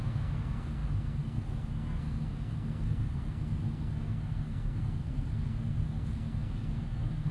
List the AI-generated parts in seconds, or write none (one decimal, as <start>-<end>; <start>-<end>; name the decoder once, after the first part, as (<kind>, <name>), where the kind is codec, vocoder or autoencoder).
0.0-7.3 (codec, SNAC)